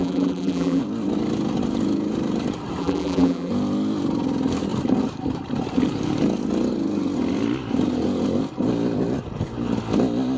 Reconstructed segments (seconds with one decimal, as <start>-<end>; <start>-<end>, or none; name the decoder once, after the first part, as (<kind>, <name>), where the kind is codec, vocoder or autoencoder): 0.0-0.8 (vocoder, BigVGAN v2); 2.8-3.5